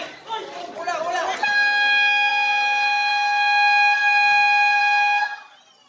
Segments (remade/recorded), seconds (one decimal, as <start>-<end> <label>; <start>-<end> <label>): 0.0-5.9 recorded